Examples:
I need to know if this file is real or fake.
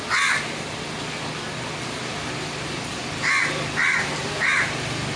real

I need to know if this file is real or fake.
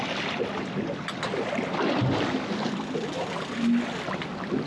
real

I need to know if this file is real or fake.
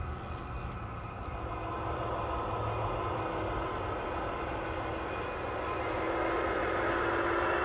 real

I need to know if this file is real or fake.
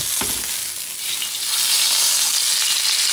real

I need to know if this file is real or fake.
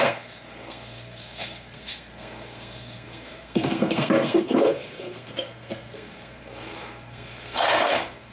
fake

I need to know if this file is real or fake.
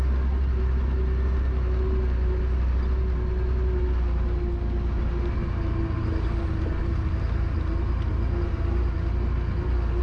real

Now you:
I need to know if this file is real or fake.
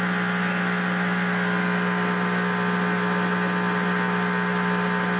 real